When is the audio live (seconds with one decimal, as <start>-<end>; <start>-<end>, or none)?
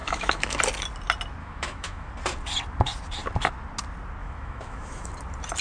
0.6-1.4; 2.1-4.2; 5.1-5.6